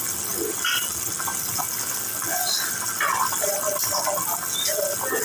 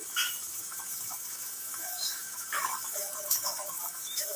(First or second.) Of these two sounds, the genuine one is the first